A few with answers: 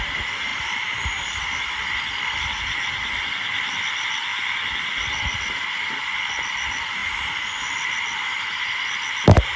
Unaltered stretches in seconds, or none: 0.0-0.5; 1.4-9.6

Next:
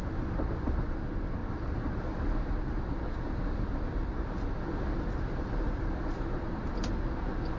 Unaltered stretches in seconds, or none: none

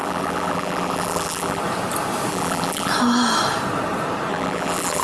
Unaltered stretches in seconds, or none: 1.6-2.3; 2.9-4.3

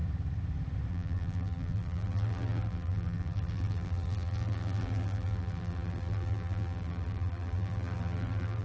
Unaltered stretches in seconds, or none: 0.0-0.9